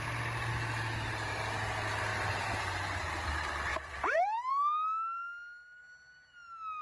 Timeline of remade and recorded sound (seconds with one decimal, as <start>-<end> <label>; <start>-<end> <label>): 0.0-2.1 recorded; 2.1-3.1 remade; 3.1-3.7 recorded; 3.7-4.5 remade; 4.5-6.8 recorded